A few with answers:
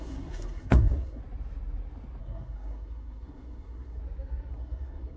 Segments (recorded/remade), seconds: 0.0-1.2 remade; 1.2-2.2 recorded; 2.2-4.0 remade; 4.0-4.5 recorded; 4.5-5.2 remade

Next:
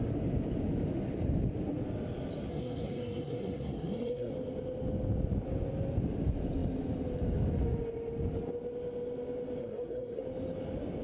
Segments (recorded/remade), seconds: 0.0-2.5 recorded; 2.5-4.3 remade; 4.3-9.6 recorded; 9.6-10.2 remade; 10.2-11.0 recorded

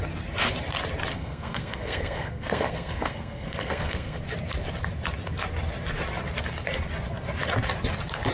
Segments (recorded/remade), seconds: 0.0-1.1 recorded; 1.1-4.2 remade; 4.2-8.3 recorded

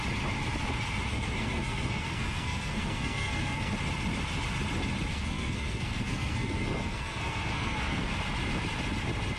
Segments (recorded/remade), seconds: 0.0-1.1 recorded; 1.1-3.7 remade; 3.7-5.1 recorded; 5.1-8.2 remade; 8.2-9.4 recorded

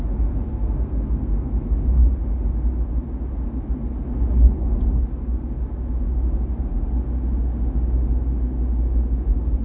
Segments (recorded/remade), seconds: 0.0-0.5 recorded; 0.5-1.5 remade; 1.5-9.6 recorded

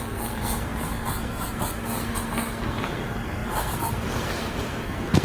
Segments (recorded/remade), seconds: 0.0-5.2 remade

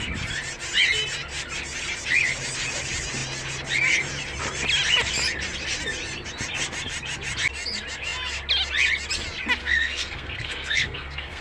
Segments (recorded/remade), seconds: 0.0-9.6 recorded; 9.6-11.4 remade